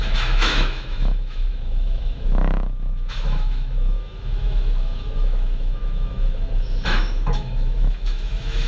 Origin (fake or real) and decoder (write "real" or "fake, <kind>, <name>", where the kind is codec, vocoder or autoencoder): fake, autoencoder, DAC-VAE